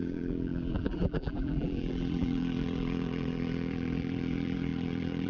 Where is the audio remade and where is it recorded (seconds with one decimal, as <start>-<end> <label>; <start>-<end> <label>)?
0.0-5.3 remade